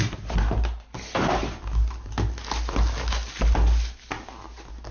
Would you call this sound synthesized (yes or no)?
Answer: no